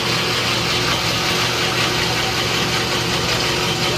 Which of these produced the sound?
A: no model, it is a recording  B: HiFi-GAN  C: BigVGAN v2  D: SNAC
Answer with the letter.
A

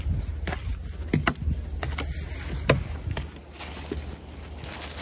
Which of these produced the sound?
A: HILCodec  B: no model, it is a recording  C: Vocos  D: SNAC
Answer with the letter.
B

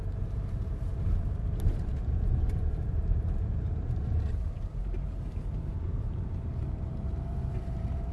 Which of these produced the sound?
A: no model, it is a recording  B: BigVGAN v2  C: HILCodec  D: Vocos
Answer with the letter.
B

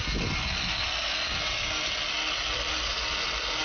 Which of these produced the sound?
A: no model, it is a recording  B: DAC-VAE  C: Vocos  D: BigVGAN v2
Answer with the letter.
A